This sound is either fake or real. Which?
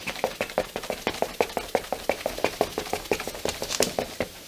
real